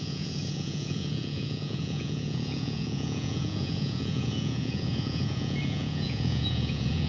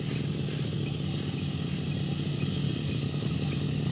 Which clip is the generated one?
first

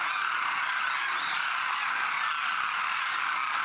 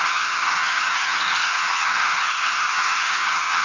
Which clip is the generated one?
second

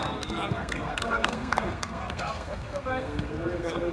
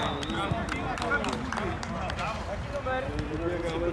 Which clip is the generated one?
first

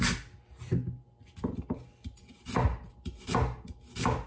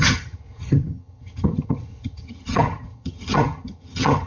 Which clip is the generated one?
second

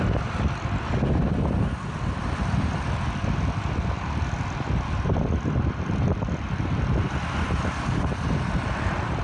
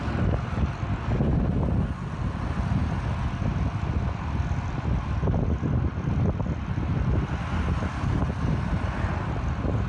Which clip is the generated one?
first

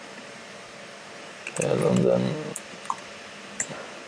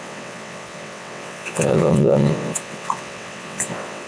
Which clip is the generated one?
second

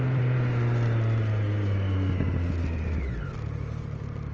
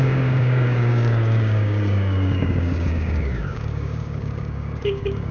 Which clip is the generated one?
second